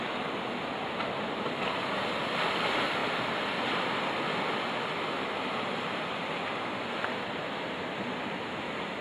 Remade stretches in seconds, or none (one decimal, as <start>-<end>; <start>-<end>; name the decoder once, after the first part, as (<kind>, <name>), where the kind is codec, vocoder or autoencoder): none

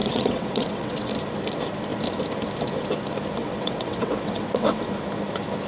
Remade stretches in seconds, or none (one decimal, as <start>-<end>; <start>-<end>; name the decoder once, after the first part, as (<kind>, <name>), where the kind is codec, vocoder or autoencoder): 0.0-1.1 (vocoder, WaveNeXt); 3.4-4.8